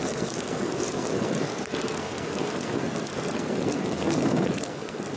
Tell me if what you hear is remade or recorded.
remade